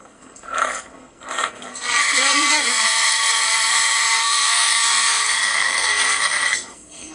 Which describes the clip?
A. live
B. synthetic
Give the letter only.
B